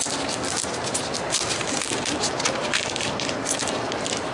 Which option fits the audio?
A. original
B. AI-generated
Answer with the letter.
A